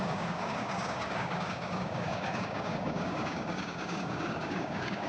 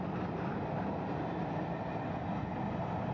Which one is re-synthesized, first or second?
first